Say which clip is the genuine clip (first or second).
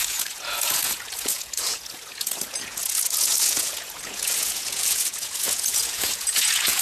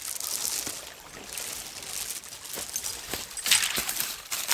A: second